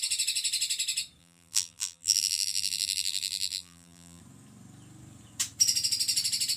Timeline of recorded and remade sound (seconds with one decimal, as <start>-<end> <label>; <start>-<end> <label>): 0.0-1.2 recorded; 1.2-4.2 remade; 4.2-6.6 recorded